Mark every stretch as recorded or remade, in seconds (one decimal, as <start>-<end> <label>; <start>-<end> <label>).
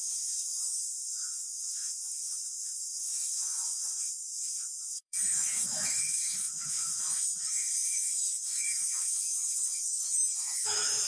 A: 0.0-11.1 remade